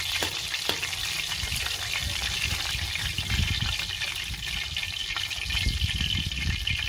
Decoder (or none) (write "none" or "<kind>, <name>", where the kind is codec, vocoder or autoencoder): none